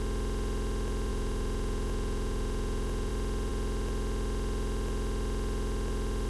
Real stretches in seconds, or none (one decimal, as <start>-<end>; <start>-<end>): 0.0-1.1; 3.1-6.3